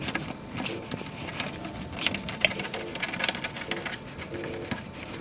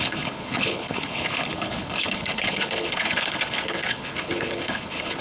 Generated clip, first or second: second